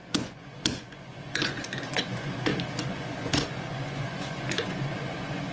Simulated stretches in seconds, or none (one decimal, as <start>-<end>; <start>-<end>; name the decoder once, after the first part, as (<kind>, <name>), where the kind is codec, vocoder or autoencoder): 0.0-5.5 (vocoder, Vocos)